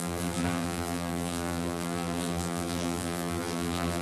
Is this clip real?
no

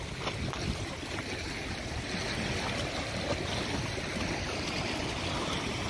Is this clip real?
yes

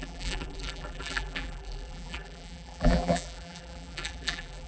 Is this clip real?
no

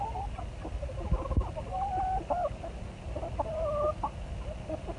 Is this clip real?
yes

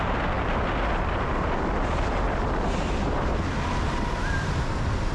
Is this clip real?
yes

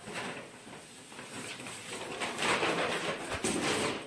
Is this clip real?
no